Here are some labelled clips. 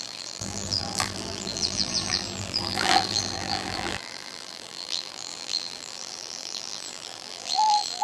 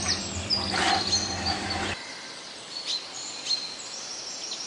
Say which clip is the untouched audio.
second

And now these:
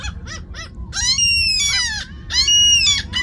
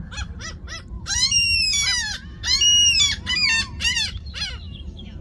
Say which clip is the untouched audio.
first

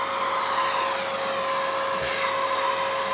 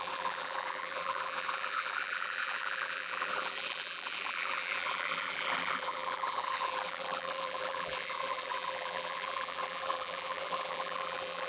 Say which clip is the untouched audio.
first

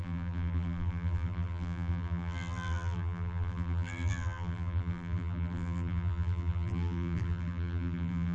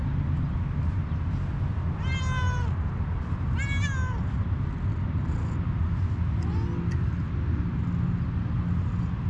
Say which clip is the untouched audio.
second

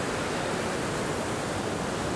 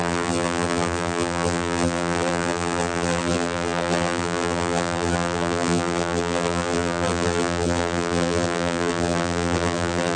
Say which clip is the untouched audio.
first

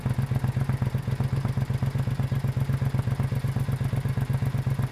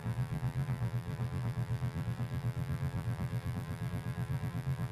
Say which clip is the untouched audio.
first